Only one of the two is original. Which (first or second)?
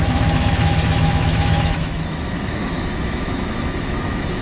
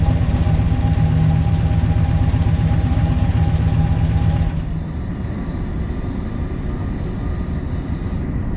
second